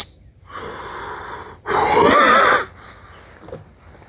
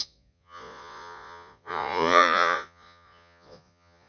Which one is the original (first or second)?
first